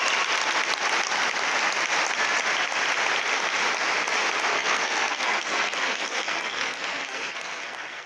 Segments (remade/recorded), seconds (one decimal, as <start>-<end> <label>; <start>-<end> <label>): 0.0-4.5 recorded; 4.5-8.1 remade